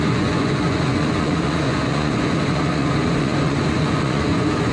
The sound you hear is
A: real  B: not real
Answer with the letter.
B